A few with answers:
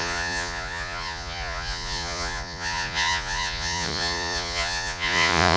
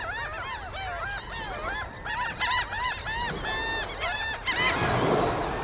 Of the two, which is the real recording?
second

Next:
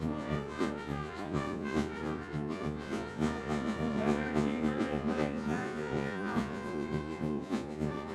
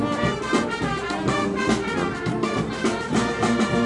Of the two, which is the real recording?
second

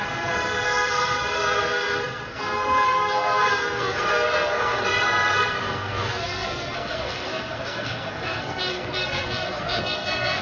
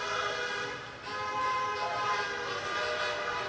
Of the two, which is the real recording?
second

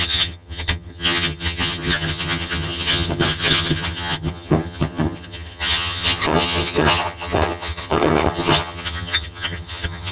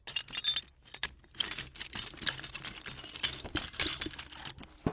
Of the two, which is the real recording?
second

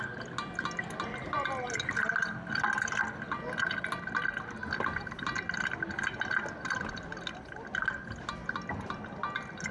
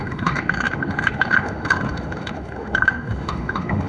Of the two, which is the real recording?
first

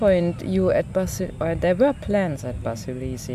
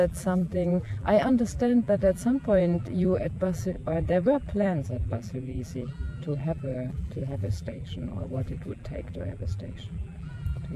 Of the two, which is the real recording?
first